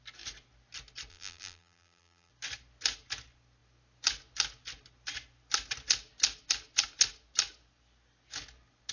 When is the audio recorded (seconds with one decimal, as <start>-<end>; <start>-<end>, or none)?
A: 0.0-1.1; 2.3-8.9